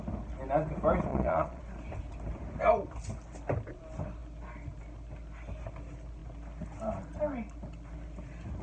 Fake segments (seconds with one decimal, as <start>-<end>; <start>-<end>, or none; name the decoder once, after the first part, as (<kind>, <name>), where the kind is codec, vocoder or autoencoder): 1.1-1.6 (vocoder, Vocos)